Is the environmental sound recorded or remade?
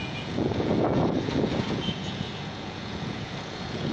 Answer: remade